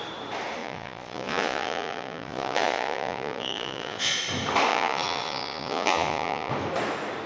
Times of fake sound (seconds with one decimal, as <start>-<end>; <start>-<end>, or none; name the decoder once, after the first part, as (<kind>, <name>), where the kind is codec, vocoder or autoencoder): 0.6-4.2 (vocoder, Vocos); 4.7-6.5